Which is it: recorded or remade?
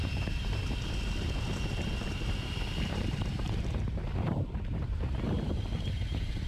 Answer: remade